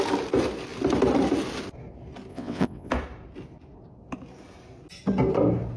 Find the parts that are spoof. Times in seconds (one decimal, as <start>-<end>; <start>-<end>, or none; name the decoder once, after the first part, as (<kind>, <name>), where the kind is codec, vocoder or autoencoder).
2.3-2.9 (vocoder, WaveNeXt)